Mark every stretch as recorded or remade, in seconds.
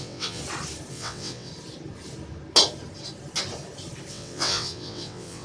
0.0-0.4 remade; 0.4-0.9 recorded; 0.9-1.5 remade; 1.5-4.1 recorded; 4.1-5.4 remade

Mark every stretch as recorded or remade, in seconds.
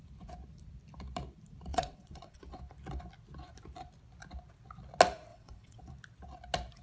0.0-1.7 recorded; 1.7-2.6 remade; 2.6-5.3 recorded; 5.3-5.9 remade; 5.9-6.8 recorded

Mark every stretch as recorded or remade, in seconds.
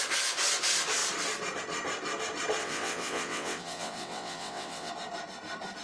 0.0-2.6 recorded; 2.6-4.9 remade; 4.9-5.8 recorded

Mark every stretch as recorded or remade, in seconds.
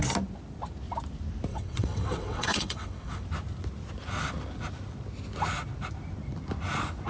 0.0-1.5 recorded; 1.5-3.2 remade; 3.2-7.1 recorded